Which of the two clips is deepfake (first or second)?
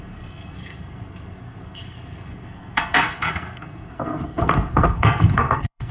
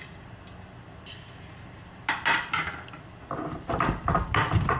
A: first